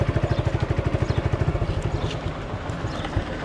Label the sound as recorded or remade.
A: recorded